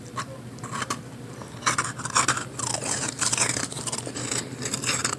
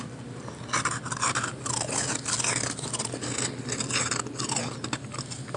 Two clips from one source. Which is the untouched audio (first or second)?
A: second